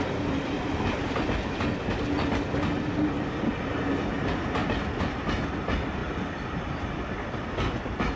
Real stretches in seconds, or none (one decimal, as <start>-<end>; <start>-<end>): 0.0-8.2